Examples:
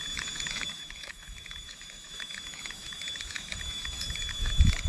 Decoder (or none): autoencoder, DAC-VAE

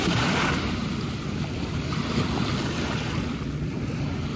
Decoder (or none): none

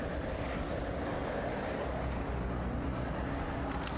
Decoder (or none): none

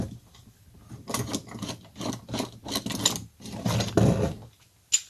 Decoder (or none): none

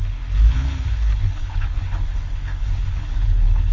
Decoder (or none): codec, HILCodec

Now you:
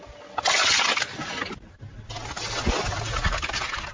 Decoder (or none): none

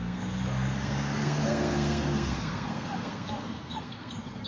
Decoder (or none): codec, SNAC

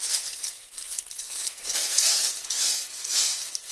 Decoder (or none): codec, SNAC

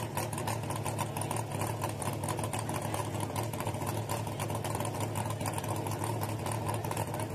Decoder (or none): none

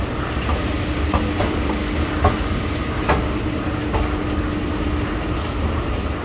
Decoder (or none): none